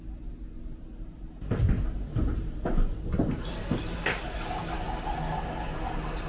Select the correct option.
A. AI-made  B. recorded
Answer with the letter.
B